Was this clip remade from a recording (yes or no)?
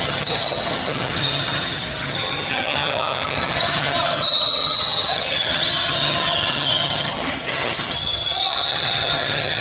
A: yes